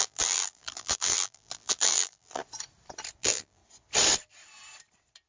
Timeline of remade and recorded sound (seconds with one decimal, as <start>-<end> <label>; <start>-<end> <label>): 0.0-2.4 remade; 2.4-3.2 recorded; 3.2-3.6 remade; 3.6-5.3 recorded